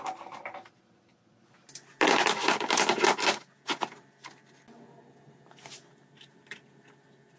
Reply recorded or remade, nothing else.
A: recorded